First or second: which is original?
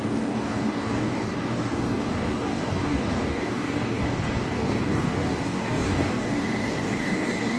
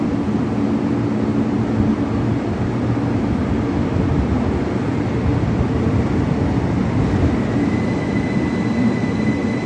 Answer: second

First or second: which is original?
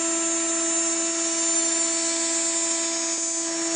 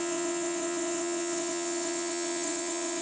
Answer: first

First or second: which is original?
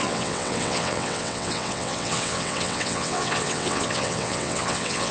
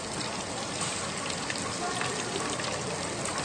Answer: second